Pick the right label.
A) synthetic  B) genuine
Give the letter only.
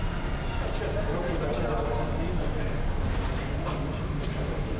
B